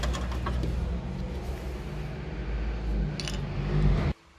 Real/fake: real